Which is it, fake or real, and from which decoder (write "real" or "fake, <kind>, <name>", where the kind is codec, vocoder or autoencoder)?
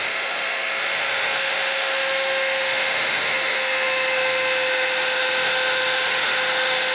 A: fake, autoencoder, DAC-VAE